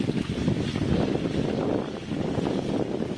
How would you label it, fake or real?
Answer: real